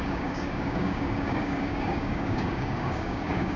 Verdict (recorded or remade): remade